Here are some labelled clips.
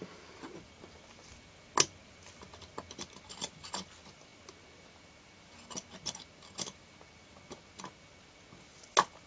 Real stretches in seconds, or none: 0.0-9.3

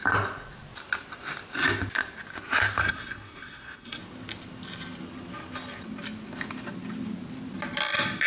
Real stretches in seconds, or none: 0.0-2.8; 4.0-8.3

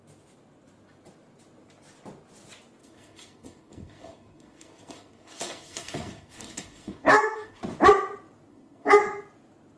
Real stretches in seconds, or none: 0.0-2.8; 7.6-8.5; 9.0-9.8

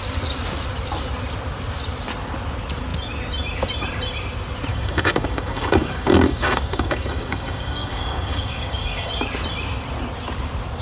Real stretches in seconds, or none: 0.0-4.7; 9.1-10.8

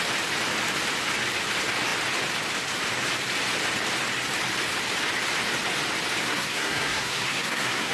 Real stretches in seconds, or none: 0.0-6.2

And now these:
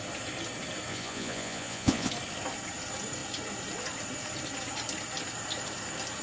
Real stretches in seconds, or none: 0.0-0.9; 2.1-6.2